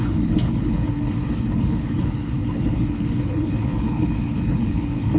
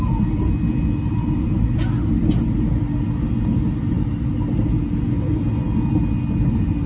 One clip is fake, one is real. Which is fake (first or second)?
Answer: first